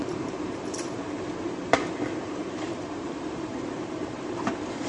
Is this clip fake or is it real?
fake